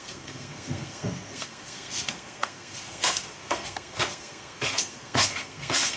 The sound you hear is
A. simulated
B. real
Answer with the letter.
A